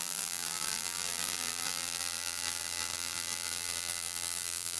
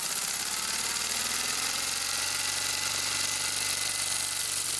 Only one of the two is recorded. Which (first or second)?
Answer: second